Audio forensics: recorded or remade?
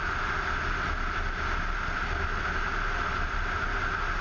recorded